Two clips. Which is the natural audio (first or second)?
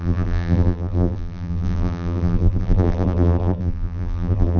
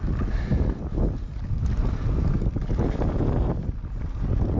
second